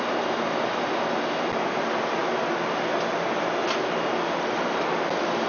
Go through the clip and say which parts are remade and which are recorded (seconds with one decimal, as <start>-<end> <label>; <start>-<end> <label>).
0.0-5.5 recorded